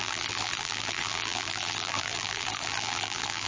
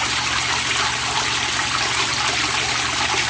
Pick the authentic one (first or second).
second